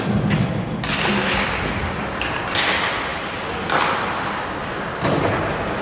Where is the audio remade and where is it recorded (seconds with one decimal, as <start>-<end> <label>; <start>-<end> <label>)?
0.0-5.8 recorded